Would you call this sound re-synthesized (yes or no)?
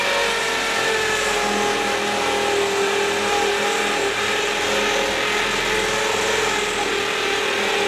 no